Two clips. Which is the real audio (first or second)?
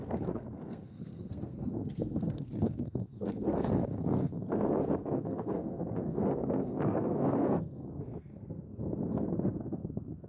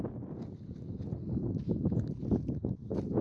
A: second